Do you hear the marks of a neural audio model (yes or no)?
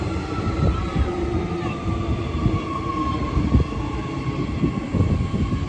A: no